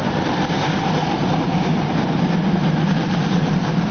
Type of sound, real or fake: real